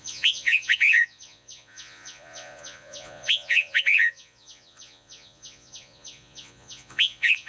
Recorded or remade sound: remade